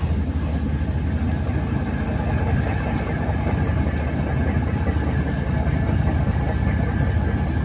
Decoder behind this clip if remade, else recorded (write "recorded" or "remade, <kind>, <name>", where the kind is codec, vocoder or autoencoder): recorded